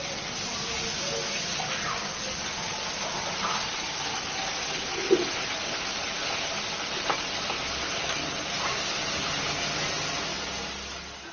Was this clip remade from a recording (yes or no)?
no